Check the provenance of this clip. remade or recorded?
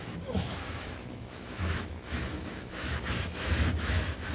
remade